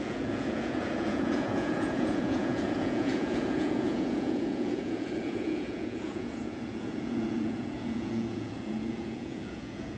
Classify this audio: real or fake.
fake